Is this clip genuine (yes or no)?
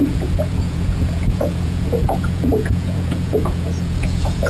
no